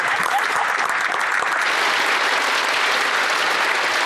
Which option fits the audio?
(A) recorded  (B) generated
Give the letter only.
A